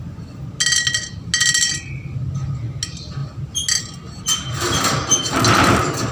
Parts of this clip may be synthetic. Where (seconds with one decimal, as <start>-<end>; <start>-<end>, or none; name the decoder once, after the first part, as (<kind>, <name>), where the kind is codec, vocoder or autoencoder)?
none